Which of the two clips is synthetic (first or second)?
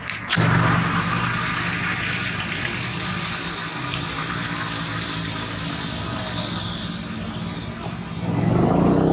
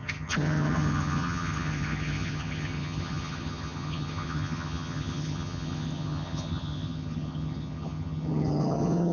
second